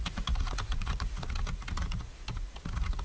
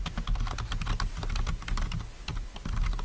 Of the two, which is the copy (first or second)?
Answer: first